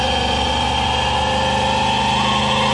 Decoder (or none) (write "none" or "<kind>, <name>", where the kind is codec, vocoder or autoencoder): none